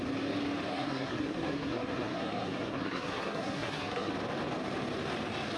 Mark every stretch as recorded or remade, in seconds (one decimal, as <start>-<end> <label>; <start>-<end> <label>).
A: 0.0-0.7 recorded; 0.7-4.1 remade; 4.1-5.6 recorded